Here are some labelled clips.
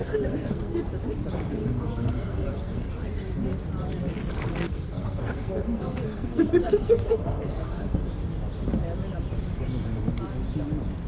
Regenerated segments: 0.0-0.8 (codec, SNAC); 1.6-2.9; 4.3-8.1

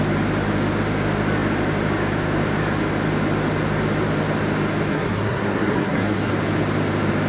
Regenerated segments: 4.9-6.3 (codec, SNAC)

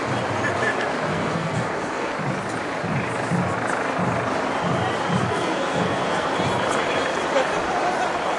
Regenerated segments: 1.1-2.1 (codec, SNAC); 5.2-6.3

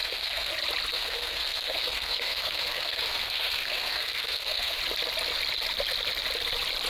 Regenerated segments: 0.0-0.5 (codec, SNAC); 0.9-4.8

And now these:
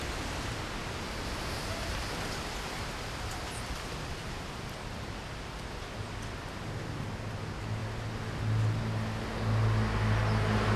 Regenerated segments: none

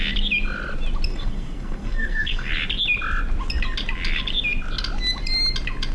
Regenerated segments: 1.1-2.5 (codec, SNAC)